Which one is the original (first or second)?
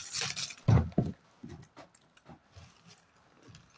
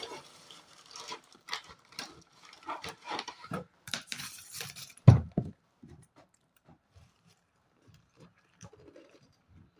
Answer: first